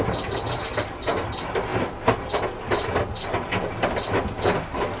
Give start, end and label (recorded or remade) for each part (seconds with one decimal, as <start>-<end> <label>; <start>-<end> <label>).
0.0-5.0 recorded